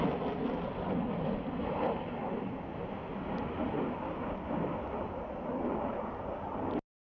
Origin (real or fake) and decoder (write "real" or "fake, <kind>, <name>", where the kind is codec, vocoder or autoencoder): real